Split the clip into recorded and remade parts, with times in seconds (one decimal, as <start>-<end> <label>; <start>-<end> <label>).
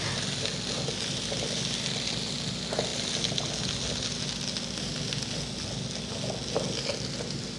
0.0-7.6 recorded